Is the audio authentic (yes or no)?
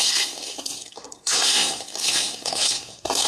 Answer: no